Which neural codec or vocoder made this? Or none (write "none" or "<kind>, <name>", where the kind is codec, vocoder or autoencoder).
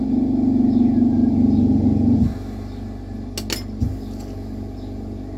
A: none